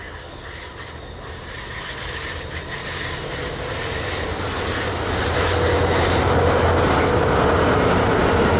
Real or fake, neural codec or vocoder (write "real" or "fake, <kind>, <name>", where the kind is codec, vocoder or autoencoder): real